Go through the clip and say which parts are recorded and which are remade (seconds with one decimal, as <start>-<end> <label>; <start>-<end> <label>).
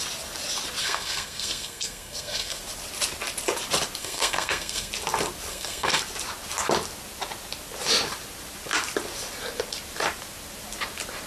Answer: 0.0-0.8 recorded; 0.8-2.6 remade; 2.6-4.0 recorded; 4.0-4.9 remade; 4.9-5.5 recorded; 5.5-6.0 remade; 6.0-11.3 recorded